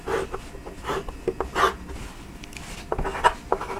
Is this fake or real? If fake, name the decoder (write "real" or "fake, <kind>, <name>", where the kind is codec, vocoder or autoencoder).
real